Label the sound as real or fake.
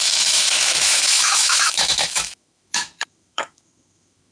fake